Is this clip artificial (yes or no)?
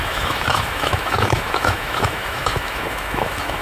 yes